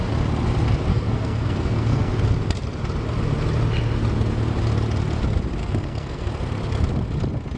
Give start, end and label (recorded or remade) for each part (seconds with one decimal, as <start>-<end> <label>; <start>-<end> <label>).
0.0-0.9 recorded; 0.9-2.1 remade; 2.1-5.6 recorded; 5.6-6.3 remade; 6.3-7.6 recorded